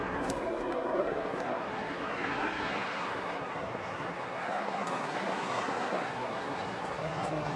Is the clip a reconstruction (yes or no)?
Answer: yes